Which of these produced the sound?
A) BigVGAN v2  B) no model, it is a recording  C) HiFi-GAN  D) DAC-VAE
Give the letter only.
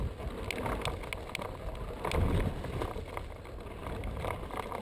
B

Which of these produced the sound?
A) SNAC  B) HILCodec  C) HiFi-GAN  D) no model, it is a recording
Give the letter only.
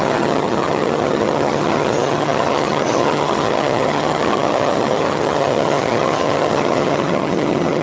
C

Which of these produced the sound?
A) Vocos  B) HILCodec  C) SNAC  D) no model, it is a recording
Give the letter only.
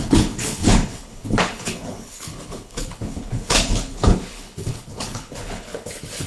B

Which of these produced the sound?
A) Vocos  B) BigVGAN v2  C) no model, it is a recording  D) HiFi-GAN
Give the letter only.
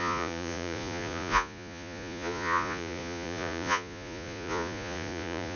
A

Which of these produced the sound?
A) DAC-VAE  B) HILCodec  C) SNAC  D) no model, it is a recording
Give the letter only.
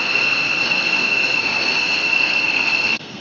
C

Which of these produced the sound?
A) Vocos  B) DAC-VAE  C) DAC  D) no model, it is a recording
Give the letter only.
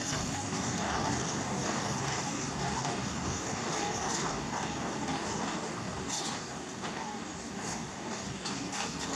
C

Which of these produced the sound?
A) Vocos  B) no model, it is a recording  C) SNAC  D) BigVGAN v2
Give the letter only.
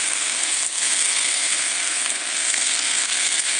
C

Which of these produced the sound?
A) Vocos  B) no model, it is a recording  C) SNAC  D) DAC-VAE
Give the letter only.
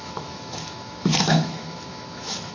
D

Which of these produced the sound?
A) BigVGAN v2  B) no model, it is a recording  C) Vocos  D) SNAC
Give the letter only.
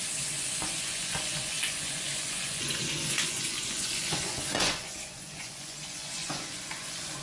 C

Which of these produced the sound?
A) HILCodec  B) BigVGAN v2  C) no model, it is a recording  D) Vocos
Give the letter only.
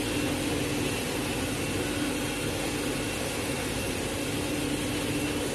C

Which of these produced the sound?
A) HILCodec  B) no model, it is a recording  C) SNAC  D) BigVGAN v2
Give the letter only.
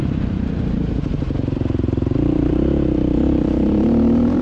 D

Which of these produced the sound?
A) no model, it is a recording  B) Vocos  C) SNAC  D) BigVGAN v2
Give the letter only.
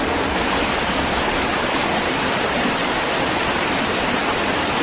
A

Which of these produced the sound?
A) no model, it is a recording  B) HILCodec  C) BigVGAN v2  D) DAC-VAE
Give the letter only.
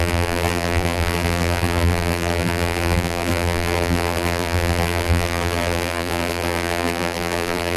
C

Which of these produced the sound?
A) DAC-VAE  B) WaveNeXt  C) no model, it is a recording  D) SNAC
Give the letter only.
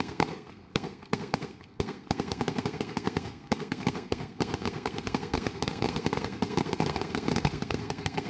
D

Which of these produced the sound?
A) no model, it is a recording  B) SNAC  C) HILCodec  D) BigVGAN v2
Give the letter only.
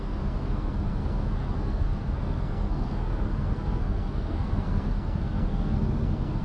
B